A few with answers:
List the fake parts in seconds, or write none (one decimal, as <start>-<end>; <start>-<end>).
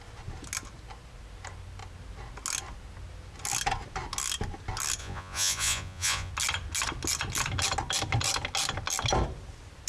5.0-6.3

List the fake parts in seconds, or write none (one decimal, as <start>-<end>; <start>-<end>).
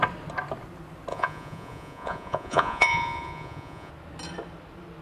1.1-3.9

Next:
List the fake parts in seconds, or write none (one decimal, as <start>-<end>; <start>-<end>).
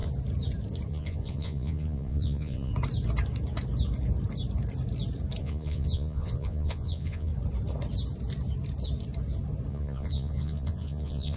0.9-2.7; 5.4-7.3; 9.7-11.4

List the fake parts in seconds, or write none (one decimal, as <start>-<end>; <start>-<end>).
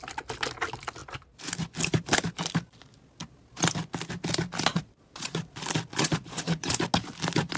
4.7-5.4; 5.9-6.7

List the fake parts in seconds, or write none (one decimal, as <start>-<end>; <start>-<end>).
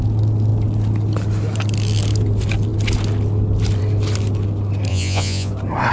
4.9-5.5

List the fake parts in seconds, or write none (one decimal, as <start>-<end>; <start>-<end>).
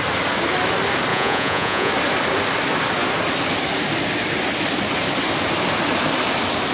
1.1-1.9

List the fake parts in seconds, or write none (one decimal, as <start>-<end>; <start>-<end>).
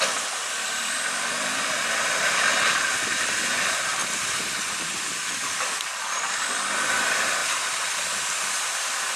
none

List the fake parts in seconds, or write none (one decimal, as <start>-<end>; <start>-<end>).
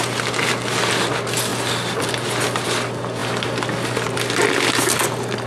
none